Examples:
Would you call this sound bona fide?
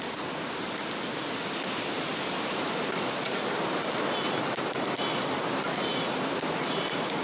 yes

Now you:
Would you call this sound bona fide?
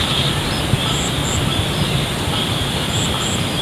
yes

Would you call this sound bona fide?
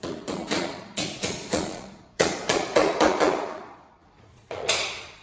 no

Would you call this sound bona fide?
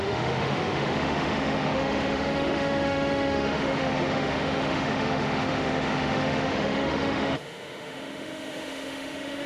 no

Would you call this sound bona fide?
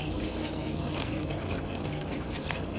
no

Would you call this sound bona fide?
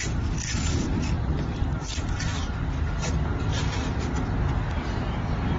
yes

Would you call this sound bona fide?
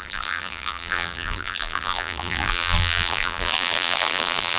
no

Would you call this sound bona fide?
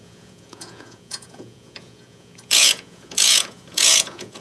no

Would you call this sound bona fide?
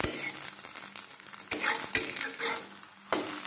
yes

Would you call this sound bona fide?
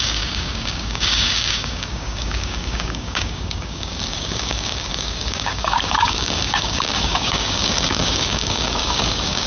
no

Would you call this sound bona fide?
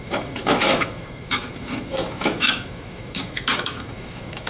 no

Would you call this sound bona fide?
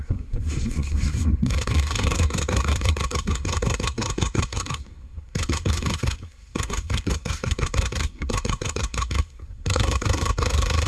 no